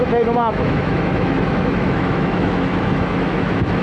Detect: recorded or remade remade